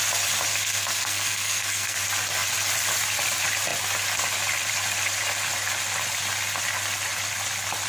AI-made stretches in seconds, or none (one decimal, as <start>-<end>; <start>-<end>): 0.5-2.0